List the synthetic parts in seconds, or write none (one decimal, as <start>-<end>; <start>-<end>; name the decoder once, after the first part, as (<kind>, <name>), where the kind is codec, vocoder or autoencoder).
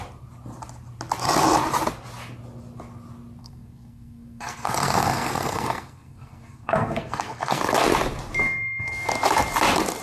3.4-7.6 (codec, SNAC); 8.4-9.1